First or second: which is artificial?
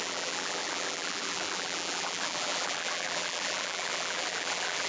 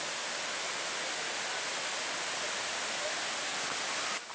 first